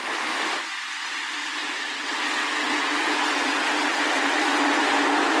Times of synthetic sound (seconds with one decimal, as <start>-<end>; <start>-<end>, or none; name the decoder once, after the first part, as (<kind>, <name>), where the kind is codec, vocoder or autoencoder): 1.6-4.8 (vocoder, WaveNeXt)

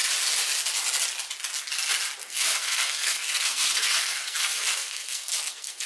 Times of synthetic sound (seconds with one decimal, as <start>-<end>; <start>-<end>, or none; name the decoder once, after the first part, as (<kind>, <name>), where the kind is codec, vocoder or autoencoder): 2.2-5.9 (codec, SNAC)

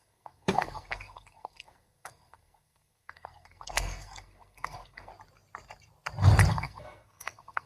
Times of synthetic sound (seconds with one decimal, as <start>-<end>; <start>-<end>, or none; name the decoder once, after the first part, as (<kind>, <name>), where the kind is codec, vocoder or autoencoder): 0.0-5.1 (codec, SNAC); 6.5-7.7

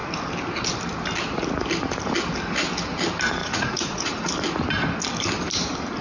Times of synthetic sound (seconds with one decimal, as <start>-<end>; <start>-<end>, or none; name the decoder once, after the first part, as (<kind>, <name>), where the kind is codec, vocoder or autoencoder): 3.4-4.3 (vocoder, Vocos)

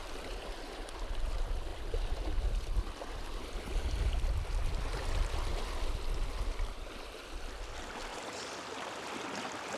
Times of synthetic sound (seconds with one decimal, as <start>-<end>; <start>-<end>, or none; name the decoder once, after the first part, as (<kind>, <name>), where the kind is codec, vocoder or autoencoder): none

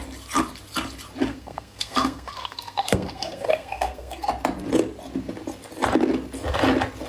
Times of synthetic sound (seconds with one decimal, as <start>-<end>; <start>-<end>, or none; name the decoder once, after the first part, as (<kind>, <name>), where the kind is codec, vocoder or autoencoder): 1.3-4.3 (codec, SNAC)